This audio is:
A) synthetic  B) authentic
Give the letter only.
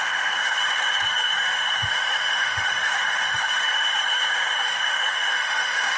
A